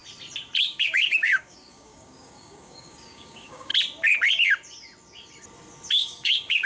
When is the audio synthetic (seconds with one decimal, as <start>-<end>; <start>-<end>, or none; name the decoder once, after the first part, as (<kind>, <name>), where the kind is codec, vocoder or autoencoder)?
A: 0.6-3.7 (codec, DAC); 5.9-6.7

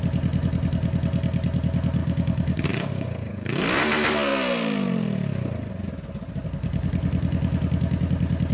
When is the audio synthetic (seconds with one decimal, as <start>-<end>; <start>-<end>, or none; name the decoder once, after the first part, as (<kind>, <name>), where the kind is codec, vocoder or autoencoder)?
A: 2.0-3.6 (codec, DAC)

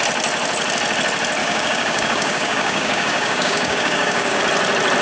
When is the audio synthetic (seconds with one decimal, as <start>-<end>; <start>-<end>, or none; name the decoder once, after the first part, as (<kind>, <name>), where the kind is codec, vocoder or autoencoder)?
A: 1.4-4.4 (codec, DAC)

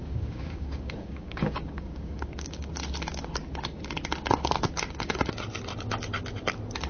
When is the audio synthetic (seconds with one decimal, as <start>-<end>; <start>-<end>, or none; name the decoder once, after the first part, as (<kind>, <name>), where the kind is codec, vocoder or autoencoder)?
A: 0.0-2.7 (codec, DAC)